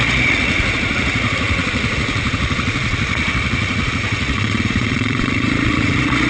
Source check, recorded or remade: remade